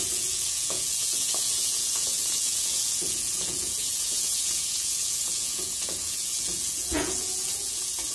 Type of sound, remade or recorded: remade